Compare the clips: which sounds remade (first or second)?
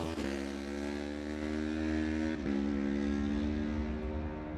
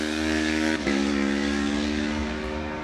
second